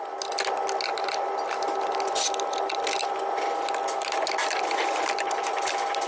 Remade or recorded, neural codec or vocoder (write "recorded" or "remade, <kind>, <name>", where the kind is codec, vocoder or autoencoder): recorded